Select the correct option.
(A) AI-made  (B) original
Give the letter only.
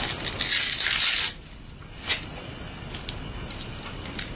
B